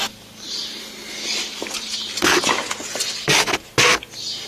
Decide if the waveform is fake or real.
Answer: real